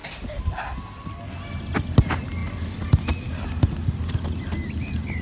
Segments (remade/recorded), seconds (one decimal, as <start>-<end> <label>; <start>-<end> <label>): 0.0-5.2 recorded